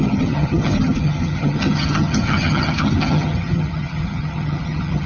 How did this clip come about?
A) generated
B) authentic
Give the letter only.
A